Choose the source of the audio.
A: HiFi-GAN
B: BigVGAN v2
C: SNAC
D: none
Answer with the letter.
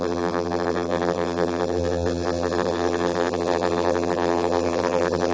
B